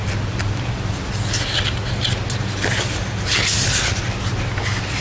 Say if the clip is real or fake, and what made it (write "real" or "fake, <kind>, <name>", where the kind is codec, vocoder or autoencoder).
real